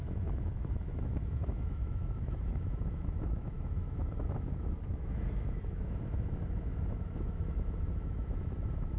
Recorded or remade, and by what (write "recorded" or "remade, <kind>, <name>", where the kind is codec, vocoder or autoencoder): remade, autoencoder, DAC-VAE